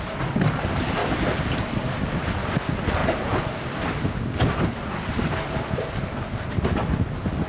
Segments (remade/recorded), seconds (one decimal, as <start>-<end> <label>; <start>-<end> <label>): 0.0-7.5 recorded